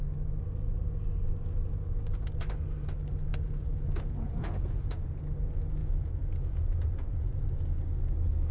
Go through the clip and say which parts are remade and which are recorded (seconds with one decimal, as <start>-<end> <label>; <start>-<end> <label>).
0.0-3.3 recorded; 3.3-5.2 remade; 5.2-5.8 recorded; 5.8-7.5 remade; 7.5-8.5 recorded